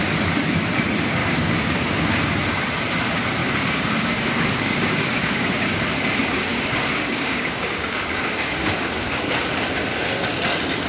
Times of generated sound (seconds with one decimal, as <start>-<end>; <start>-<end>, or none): 1.2-2.1; 3.4-5.8; 6.5-9.2

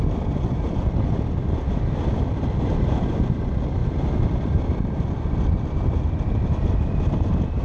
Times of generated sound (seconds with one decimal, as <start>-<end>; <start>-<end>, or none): none

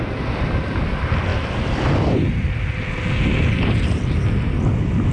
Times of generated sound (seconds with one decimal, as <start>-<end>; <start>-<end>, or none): none

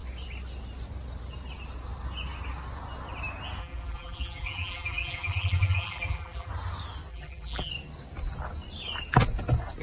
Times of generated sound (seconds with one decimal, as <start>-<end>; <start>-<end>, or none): 3.6-6.5; 7.1-7.7

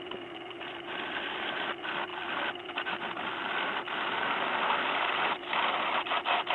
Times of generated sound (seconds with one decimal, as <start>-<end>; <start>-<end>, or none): 2.1-6.0

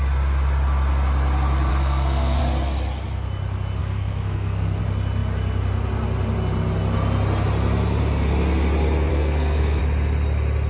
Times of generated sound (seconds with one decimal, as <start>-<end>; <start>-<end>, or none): 1.7-2.4; 3.8-4.8; 9.1-9.8